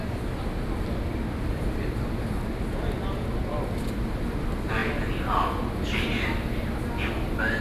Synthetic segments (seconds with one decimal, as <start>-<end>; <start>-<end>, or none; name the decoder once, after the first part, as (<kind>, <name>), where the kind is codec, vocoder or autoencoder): none